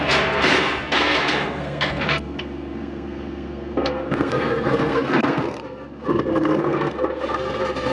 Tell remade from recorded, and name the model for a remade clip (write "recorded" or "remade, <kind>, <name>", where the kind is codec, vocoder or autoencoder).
remade, codec, SNAC